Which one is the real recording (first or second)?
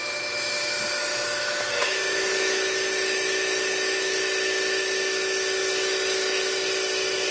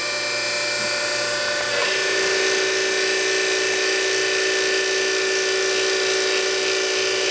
second